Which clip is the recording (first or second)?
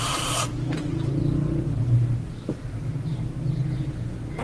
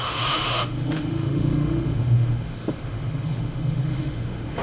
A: first